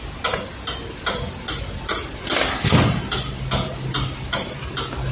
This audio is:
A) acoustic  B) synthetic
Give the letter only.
A